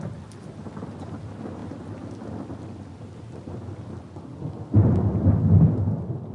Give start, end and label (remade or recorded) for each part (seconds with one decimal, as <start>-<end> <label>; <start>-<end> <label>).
0.0-6.3 recorded